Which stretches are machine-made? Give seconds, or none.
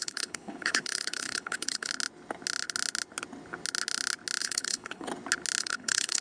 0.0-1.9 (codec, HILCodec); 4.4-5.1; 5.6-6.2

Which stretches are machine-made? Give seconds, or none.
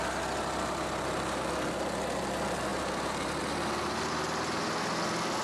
2.7-3.4 (vocoder, BigVGAN v2)